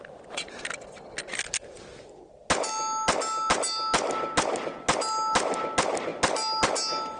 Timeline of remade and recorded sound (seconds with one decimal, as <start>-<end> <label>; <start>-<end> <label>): 0.0-7.2 recorded